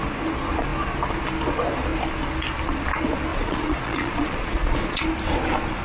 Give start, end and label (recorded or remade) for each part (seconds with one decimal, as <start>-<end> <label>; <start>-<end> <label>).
0.0-3.3 recorded; 3.3-5.0 remade; 5.0-5.8 recorded